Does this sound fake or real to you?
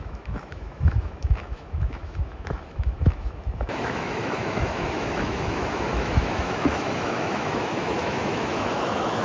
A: fake